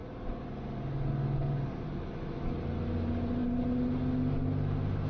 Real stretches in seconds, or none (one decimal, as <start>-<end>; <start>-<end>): 0.0-5.1